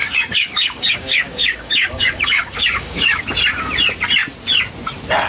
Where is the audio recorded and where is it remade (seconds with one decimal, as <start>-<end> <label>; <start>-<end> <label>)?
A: 0.0-3.2 remade; 3.2-5.3 recorded